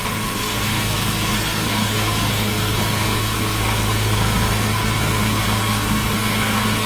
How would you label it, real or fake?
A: fake